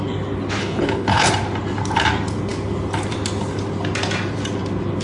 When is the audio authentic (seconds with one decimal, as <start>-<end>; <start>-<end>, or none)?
0.0-0.6; 1.3-5.0